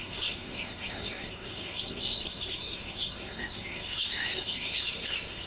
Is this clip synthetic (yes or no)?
yes